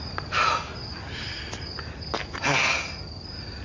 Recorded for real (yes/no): yes